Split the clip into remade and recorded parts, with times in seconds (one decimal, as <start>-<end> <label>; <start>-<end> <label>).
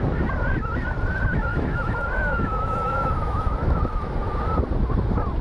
0.0-1.5 recorded; 1.5-4.2 remade; 4.2-5.4 recorded